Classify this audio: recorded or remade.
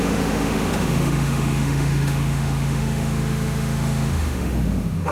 remade